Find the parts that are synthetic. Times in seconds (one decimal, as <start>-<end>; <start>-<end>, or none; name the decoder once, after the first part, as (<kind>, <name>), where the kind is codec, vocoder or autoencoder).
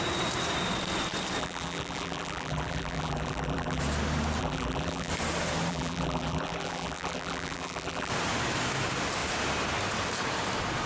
1.4-3.8 (vocoder, BigVGAN v2); 4.4-5.1; 5.7-8.1